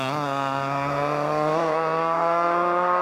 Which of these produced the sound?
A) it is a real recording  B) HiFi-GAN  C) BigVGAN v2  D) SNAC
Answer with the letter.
D